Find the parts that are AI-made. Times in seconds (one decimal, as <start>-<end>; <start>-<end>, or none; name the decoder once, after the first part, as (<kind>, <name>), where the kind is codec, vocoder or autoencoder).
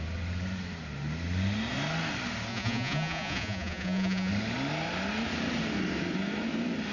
2.5-4.3 (vocoder, Vocos)